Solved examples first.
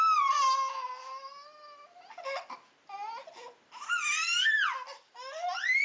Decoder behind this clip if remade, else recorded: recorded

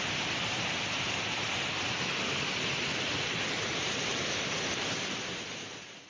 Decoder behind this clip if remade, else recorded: recorded